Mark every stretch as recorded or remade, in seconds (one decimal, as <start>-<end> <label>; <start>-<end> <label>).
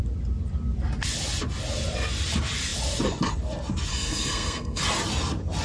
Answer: 0.0-3.9 recorded; 3.9-4.8 remade; 4.8-5.6 recorded